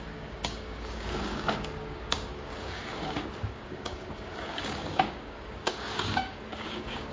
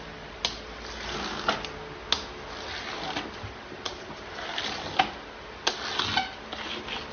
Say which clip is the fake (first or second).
first